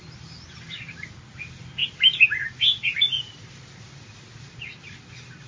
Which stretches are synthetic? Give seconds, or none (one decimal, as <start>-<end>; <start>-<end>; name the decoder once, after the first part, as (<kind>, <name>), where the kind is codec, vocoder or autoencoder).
none